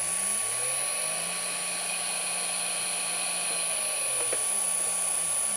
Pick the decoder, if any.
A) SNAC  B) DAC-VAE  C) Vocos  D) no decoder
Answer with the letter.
D